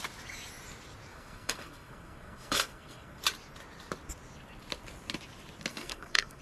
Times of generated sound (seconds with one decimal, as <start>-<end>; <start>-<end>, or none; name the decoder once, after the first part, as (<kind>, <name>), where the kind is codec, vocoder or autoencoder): 1.1-3.2 (codec, SNAC); 5.7-6.4